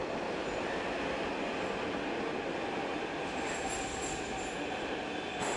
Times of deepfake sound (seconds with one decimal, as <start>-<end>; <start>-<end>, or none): none